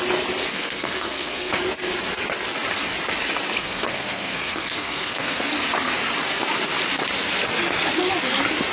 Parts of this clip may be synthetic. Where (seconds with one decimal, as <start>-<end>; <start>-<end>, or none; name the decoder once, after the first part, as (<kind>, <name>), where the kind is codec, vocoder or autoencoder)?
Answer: 0.5-1.5 (codec, SNAC); 3.6-5.4